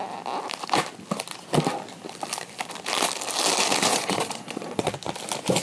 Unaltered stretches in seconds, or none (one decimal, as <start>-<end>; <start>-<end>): 0.0-3.9; 4.9-5.6